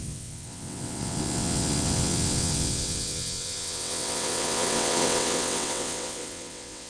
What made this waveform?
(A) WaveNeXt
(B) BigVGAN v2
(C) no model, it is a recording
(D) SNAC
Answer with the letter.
A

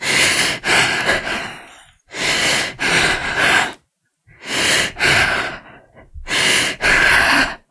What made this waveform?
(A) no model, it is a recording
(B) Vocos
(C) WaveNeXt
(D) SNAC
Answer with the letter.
A